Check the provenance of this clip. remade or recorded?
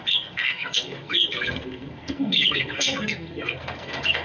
remade